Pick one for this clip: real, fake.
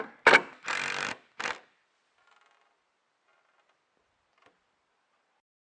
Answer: real